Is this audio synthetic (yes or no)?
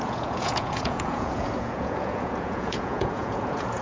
yes